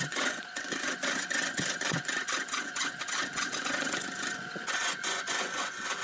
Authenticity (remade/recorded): remade